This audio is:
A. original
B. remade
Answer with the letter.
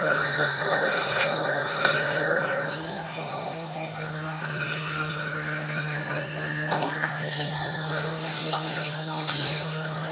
B